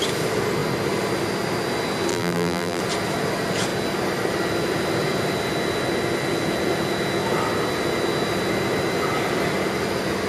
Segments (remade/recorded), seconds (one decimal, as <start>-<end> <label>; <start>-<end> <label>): 0.0-2.1 recorded; 2.1-2.8 remade; 2.8-10.3 recorded